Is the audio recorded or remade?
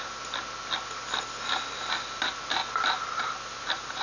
recorded